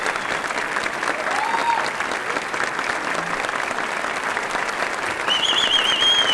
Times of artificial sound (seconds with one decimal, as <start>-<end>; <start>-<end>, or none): none